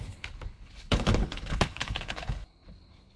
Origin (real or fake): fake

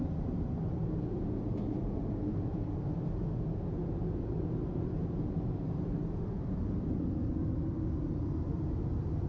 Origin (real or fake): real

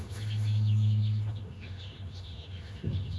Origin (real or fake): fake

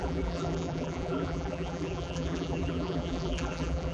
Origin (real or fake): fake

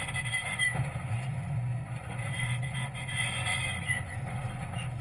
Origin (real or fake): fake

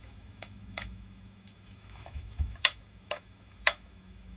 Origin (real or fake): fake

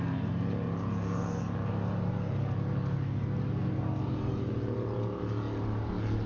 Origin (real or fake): real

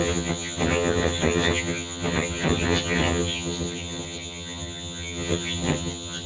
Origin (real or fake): fake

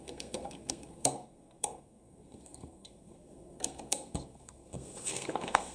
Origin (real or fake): fake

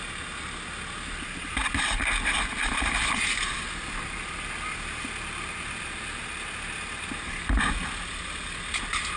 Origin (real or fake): real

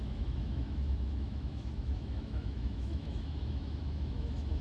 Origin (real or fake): fake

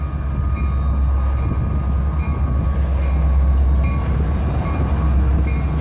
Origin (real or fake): real